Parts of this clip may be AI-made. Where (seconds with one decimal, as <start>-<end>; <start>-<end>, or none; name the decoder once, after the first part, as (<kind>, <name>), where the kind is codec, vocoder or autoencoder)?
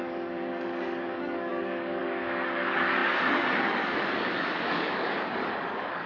0.0-6.1 (codec, DAC)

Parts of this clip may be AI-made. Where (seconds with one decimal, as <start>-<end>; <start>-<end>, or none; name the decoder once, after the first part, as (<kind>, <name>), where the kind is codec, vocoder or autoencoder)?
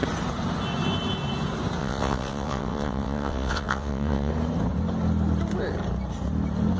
1.8-4.3 (vocoder, WaveNeXt)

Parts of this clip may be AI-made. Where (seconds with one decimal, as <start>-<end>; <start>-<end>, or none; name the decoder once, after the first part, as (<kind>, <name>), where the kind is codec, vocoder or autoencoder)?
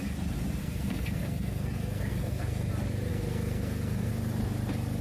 0.6-2.7 (codec, SNAC); 3.1-4.1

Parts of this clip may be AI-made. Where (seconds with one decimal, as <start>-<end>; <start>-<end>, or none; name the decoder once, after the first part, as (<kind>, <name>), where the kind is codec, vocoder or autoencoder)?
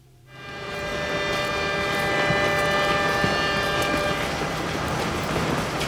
0.0-0.9 (vocoder, BigVGAN v2); 4.4-5.9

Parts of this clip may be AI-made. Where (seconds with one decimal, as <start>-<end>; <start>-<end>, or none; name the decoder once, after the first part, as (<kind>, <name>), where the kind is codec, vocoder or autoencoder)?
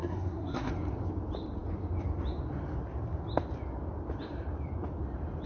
0.0-0.7 (codec, SNAC)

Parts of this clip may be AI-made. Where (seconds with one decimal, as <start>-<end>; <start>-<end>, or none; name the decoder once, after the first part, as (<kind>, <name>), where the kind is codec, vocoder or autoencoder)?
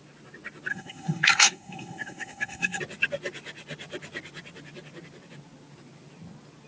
0.7-2.8 (codec, SNAC)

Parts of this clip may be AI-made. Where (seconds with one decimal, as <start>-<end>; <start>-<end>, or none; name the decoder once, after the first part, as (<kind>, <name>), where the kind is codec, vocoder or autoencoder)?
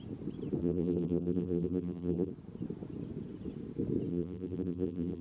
0.6-2.3 (vocoder, BigVGAN v2); 4.1-5.2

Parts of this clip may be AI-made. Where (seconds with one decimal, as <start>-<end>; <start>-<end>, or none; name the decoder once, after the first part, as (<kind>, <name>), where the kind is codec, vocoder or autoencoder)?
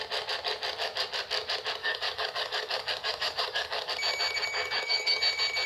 1.8-3.9 (codec, DAC); 4.5-5.2